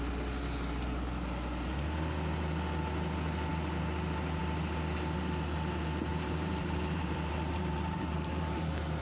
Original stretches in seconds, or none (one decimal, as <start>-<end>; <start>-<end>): 0.0-6.1